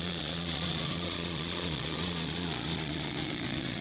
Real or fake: fake